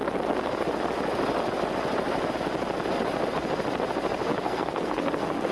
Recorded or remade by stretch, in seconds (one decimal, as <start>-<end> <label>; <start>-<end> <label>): 0.0-4.3 recorded; 4.3-5.5 remade